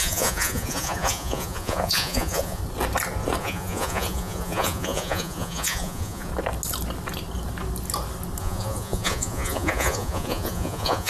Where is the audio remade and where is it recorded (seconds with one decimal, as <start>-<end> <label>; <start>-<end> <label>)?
0.0-2.6 remade; 2.6-3.4 recorded; 3.4-6.3 remade; 6.3-8.4 recorded; 8.4-11.1 remade